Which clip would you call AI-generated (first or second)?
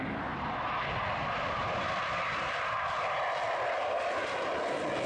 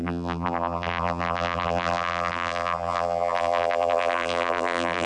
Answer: second